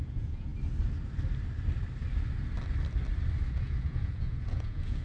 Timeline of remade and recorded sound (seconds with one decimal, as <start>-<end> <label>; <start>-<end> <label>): 0.0-0.5 remade; 0.5-3.5 recorded; 3.5-5.0 remade